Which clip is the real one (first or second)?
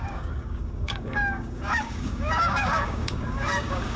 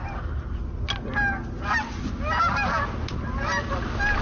second